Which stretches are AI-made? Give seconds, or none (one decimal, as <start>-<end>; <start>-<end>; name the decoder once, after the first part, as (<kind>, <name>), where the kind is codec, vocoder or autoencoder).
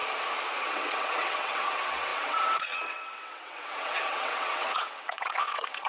0.6-5.9 (vocoder, WaveNeXt)